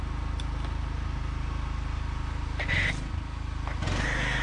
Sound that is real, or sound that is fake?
real